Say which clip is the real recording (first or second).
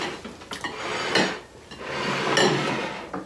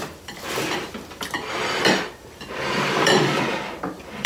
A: first